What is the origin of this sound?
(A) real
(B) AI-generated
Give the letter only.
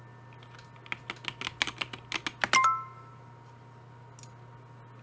A